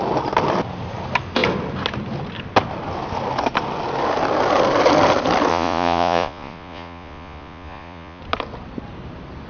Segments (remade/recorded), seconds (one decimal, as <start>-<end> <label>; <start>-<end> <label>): 0.0-5.5 recorded; 5.5-8.2 remade; 8.2-9.5 recorded